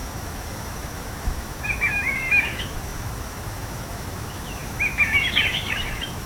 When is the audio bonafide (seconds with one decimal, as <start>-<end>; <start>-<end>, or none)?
none